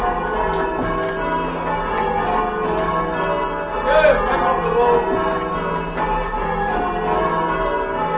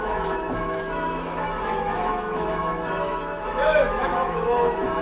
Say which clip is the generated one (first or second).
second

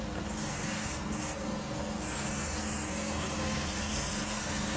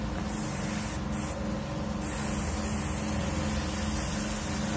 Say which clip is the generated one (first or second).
first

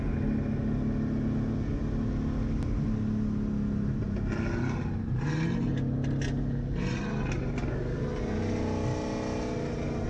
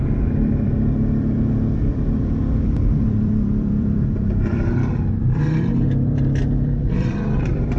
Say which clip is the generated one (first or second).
second